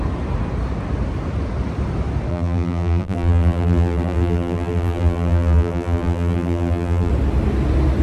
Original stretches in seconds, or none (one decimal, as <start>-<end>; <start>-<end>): 0.0-2.3; 7.1-8.0